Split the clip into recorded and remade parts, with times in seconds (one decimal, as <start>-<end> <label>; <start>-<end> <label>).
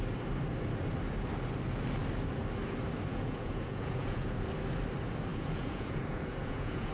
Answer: 0.0-3.1 recorded; 3.1-4.5 remade; 4.5-5.3 recorded; 5.3-6.9 remade